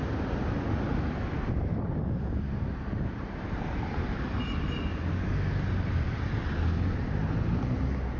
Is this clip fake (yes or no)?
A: no